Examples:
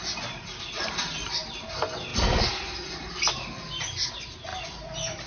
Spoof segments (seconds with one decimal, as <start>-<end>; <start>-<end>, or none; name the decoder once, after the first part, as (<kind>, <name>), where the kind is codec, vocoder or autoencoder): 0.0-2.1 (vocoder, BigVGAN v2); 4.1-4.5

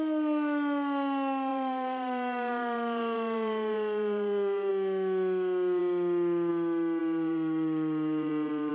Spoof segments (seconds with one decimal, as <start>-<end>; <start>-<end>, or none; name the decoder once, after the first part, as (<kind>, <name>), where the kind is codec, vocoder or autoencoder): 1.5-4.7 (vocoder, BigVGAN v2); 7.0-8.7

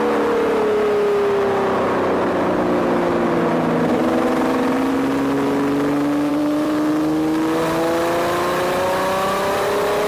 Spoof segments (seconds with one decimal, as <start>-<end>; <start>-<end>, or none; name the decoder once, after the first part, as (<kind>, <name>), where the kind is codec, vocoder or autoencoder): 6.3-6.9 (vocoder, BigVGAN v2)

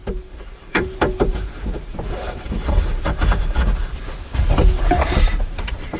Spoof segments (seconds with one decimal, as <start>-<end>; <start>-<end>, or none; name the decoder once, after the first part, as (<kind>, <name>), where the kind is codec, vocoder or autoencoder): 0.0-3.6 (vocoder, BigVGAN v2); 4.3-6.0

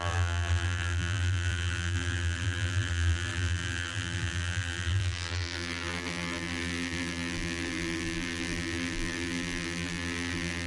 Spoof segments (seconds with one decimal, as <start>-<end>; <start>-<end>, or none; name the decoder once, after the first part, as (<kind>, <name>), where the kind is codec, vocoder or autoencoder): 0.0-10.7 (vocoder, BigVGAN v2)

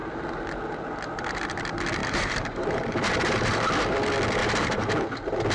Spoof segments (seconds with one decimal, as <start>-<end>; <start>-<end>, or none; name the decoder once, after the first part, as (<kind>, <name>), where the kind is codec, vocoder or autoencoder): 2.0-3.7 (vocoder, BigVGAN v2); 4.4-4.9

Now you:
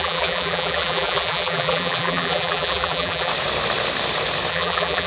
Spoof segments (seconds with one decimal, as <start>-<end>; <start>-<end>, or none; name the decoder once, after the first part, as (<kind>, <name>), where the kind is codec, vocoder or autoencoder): 0.0-3.3 (vocoder, BigVGAN v2); 4.5-5.1

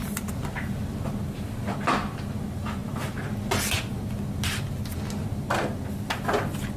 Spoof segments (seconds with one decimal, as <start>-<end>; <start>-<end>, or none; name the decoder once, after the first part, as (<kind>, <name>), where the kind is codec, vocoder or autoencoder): 0.0-0.7 (vocoder, BigVGAN v2)